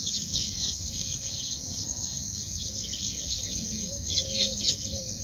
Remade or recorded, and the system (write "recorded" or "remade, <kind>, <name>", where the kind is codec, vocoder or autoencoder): remade, codec, SNAC